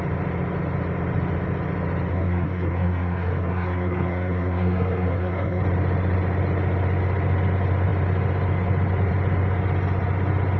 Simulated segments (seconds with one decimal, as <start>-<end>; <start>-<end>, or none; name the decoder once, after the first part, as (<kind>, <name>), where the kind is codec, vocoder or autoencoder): 2.1-5.6 (codec, SNAC)